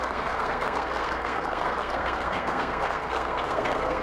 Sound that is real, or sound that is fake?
fake